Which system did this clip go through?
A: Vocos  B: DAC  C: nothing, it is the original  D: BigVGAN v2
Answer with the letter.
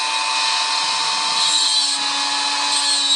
C